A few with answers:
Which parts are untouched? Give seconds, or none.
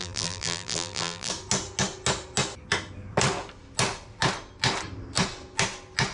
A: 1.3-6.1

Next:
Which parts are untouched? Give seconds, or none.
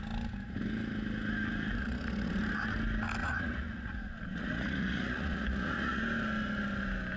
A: 0.0-1.8; 2.4-3.2; 6.0-7.2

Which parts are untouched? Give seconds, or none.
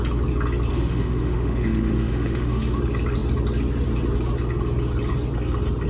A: 0.0-0.7; 2.8-5.9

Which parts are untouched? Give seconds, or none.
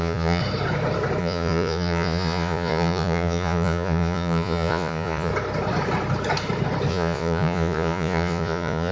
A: 0.4-1.2; 5.3-6.9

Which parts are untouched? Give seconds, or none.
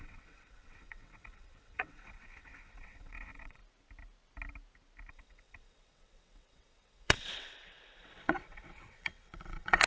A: 3.6-5.1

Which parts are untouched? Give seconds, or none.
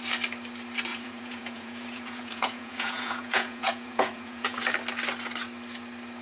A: 0.0-0.9; 4.6-6.2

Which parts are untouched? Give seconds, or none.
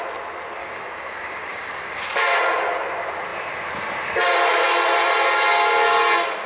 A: 0.0-0.6; 2.4-6.5